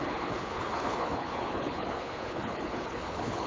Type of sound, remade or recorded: remade